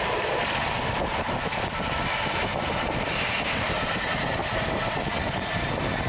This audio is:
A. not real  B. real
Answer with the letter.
A